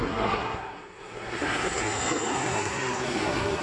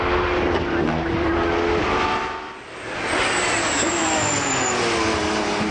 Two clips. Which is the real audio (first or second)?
second